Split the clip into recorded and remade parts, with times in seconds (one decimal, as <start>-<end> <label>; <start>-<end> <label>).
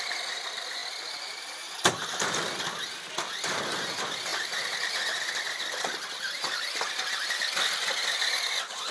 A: 0.0-8.9 recorded